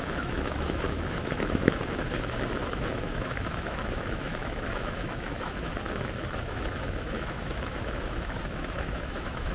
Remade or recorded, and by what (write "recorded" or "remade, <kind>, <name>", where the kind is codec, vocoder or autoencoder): remade, autoencoder, DAC-VAE